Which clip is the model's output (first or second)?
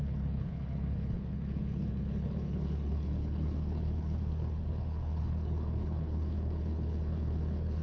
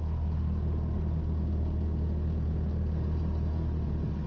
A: first